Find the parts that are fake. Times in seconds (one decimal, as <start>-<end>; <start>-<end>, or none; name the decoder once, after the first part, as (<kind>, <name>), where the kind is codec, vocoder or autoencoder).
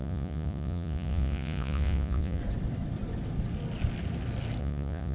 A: 0.0-2.4 (vocoder, Vocos); 4.6-5.1